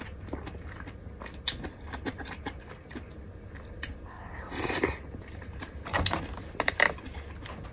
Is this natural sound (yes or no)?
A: yes